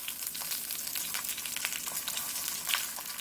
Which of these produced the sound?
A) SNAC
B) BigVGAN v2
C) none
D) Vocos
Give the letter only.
C